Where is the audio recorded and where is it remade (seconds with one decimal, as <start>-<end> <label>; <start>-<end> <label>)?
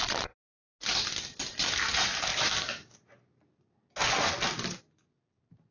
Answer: 0.0-5.7 recorded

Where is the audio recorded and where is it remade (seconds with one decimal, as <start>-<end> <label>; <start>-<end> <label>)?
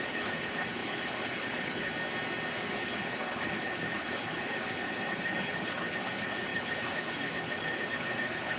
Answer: 0.0-1.9 remade; 1.9-2.7 recorded; 2.7-8.6 remade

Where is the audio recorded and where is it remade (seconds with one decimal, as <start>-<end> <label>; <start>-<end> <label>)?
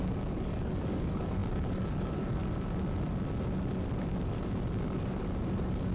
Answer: 0.0-2.4 remade; 2.4-4.7 recorded; 4.7-5.9 remade